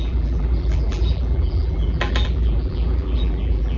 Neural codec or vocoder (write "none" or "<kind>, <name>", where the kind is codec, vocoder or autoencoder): vocoder, BigVGAN v2